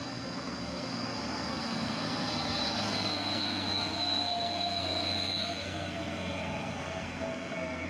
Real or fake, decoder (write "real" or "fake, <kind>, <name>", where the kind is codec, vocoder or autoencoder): fake, codec, SNAC